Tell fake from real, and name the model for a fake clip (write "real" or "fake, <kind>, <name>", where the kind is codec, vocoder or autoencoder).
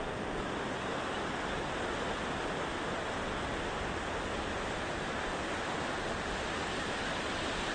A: real